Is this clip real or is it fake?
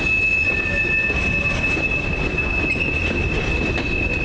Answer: real